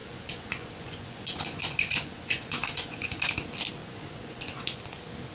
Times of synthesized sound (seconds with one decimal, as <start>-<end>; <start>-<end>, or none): 0.0-3.2; 3.8-4.8